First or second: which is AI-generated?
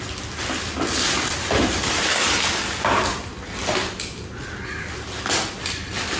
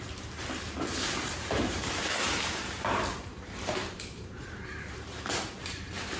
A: second